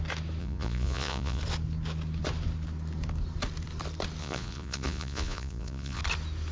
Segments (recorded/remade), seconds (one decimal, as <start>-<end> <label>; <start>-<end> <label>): 0.0-0.4 recorded; 0.4-1.4 remade; 1.4-4.2 recorded; 4.2-6.0 remade; 6.0-6.5 recorded